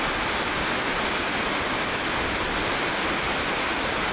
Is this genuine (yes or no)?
yes